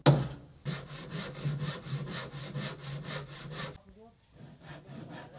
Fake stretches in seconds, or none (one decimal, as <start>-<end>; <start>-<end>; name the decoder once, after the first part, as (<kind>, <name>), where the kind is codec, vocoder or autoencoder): none